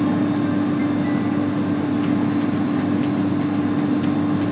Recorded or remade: recorded